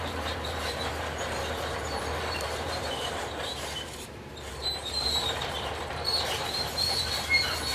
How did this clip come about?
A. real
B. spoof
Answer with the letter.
B